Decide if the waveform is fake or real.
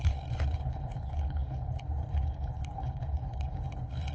fake